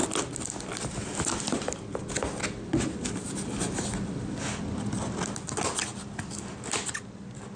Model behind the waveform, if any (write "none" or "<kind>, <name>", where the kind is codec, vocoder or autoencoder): none